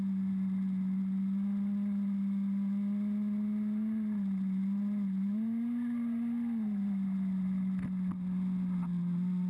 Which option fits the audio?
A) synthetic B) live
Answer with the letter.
B